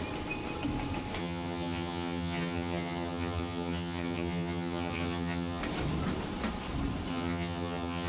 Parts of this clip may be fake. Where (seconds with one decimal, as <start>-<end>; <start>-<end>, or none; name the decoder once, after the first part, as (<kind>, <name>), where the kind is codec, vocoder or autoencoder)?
1.2-5.6 (vocoder, HiFi-GAN); 7.1-8.1